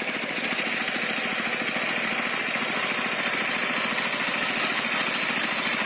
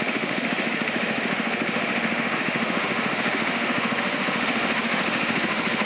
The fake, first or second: second